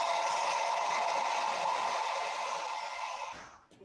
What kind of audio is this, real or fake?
real